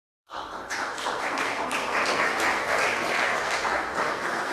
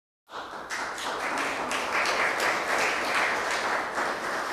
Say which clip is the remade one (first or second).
first